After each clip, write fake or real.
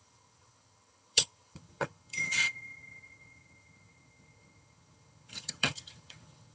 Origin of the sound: fake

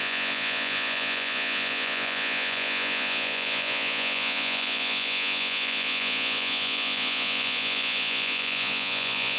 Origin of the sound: fake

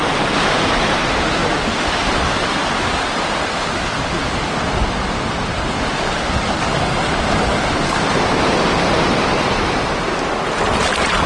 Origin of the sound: real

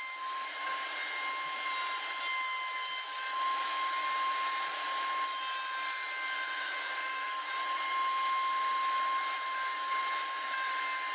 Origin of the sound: real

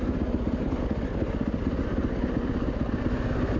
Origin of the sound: real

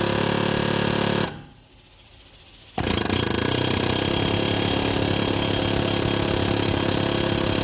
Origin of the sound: real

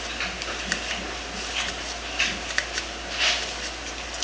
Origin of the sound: real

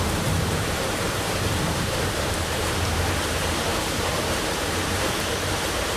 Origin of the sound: fake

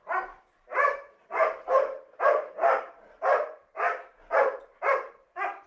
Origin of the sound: real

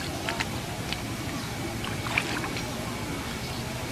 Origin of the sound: real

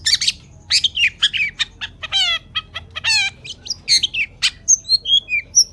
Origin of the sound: real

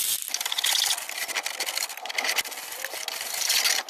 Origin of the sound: real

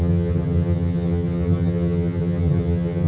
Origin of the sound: fake